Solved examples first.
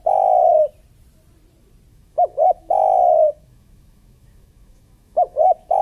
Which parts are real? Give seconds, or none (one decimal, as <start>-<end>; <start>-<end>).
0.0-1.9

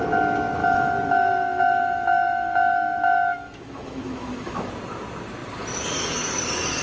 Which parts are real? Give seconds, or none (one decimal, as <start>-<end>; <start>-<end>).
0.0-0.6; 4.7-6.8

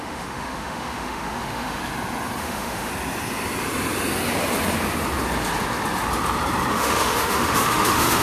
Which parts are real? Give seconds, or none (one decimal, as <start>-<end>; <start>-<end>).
1.8-2.4; 2.9-6.7

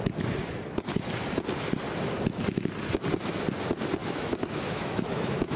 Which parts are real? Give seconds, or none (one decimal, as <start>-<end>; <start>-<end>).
0.0-4.0